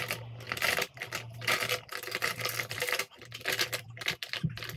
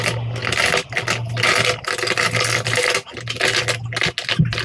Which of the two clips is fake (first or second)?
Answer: first